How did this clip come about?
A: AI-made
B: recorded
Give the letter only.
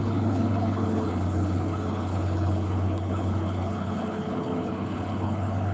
A